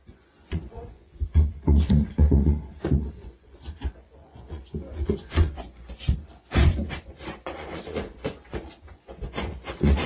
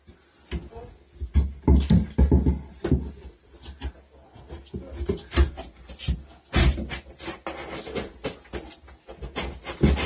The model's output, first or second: first